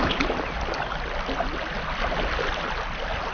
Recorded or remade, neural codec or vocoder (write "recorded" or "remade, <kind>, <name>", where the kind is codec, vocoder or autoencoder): recorded